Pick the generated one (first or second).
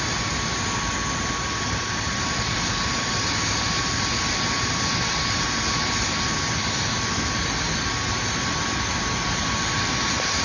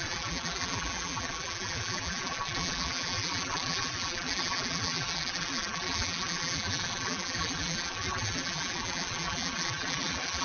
second